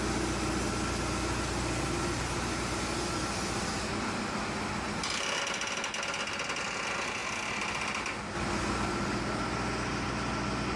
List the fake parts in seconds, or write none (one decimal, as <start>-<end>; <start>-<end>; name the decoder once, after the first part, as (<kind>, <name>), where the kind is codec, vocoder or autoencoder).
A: none